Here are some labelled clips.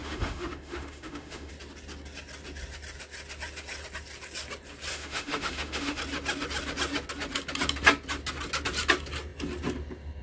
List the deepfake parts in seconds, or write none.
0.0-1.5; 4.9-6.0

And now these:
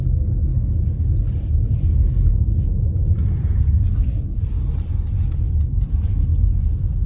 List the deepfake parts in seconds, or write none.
none

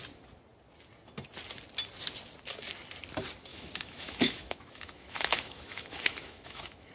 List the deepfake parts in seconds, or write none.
3.5-6.9

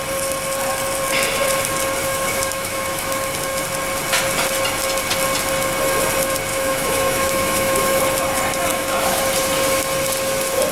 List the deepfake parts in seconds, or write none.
2.0-3.3; 6.5-8.0; 8.7-9.2

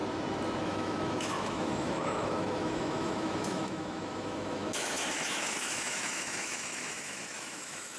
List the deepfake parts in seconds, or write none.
0.6-8.0

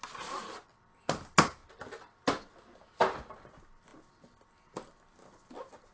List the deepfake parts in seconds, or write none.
none

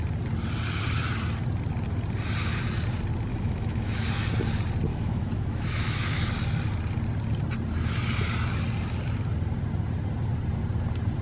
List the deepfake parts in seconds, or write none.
3.3-4.1; 4.9-6.3

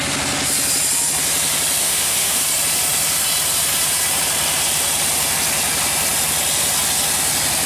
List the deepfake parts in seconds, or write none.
1.8-2.4